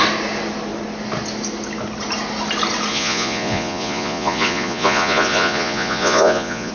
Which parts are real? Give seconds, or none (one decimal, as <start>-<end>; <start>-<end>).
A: 0.0-2.9